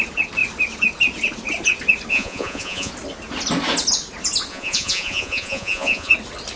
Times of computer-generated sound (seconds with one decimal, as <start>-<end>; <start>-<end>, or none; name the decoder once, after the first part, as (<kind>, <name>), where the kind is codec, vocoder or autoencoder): 2.1-2.9 (vocoder, Vocos); 4.5-6.1